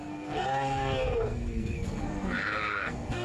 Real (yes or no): no